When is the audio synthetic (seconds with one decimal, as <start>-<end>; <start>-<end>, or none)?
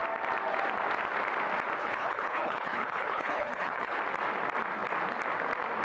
1.8-4.0